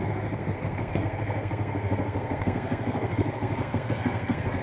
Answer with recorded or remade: remade